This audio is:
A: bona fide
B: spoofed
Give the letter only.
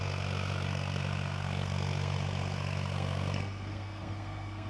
B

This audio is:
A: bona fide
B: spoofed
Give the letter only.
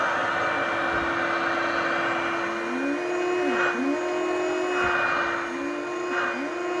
A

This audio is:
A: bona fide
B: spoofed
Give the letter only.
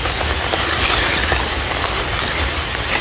A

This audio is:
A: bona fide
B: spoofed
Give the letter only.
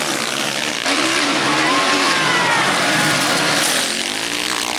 A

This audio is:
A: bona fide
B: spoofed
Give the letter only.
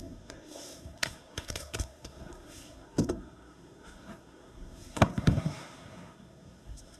B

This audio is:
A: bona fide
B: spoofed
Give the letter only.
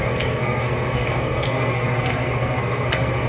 B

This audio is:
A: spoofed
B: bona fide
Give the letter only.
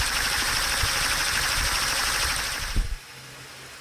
B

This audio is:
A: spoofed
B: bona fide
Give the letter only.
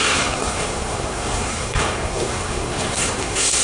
A